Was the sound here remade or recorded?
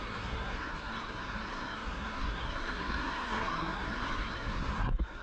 remade